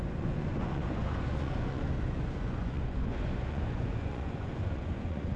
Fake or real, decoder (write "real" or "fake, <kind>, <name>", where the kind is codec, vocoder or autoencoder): fake, vocoder, Vocos